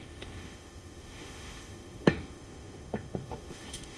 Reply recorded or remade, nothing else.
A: remade